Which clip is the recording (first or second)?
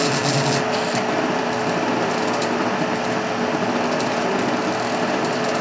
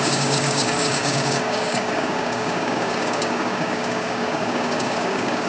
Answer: first